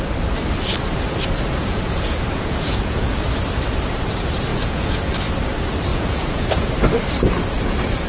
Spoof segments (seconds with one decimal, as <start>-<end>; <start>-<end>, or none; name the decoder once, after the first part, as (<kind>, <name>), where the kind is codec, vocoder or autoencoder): 1.6-3.1 (vocoder, Vocos); 4.5-5.0; 5.9-6.7